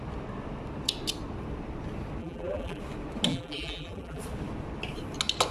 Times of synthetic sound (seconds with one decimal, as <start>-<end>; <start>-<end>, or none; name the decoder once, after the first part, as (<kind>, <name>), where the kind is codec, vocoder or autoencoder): 2.2-2.8 (vocoder, BigVGAN v2); 3.3-4.2